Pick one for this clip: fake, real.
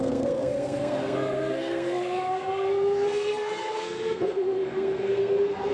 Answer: fake